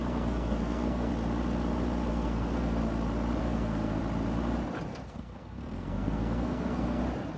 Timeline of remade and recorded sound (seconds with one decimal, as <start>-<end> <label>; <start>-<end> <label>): 0.0-1.1 remade; 1.1-2.1 recorded; 2.1-2.8 remade; 2.8-3.4 recorded; 3.4-4.0 remade; 4.0-4.9 recorded; 4.9-7.0 remade; 7.0-7.4 recorded